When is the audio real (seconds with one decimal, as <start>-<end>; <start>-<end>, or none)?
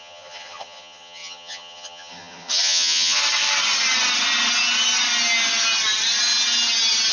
3.2-7.1